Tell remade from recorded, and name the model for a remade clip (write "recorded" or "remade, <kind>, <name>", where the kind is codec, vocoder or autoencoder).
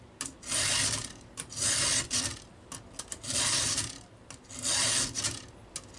recorded